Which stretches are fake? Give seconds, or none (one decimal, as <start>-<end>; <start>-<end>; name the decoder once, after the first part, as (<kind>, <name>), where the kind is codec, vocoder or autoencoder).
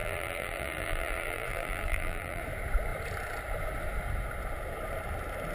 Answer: 0.0-2.4 (vocoder, BigVGAN v2)